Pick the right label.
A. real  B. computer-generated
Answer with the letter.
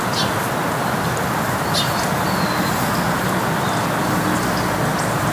A